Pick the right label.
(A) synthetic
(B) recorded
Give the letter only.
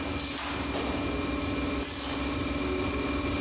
B